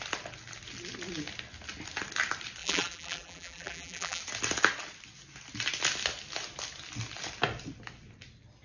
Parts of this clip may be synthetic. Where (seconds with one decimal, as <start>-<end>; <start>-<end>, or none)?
2.6-4.2